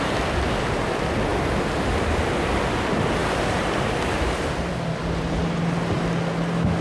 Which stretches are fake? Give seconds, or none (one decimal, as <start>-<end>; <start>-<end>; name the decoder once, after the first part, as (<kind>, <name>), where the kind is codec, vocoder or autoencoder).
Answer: 3.2-5.3 (vocoder, BigVGAN v2)